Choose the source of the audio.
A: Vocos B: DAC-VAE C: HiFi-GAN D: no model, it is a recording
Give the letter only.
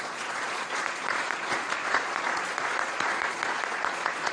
A